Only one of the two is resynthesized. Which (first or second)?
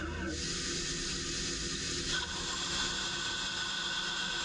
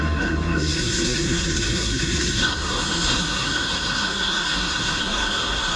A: second